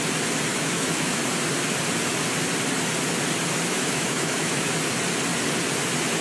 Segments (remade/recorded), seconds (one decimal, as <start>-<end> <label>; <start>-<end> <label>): 0.0-0.5 recorded; 0.5-1.2 remade; 1.2-3.7 recorded; 3.7-4.7 remade; 4.7-6.2 recorded